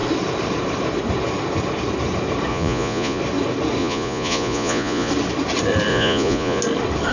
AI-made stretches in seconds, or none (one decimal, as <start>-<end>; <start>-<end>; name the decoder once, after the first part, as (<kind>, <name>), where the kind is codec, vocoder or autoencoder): 2.5-3.2 (vocoder, Vocos); 3.8-5.1; 5.9-6.6

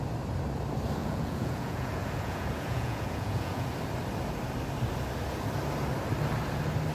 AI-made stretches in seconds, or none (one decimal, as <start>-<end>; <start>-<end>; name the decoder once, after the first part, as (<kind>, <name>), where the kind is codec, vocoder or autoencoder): 1.0-3.7 (vocoder, Vocos)

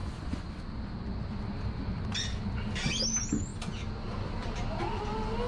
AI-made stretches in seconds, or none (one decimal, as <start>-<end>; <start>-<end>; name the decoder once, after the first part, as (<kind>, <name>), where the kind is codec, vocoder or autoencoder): 0.0-0.5 (vocoder, Vocos)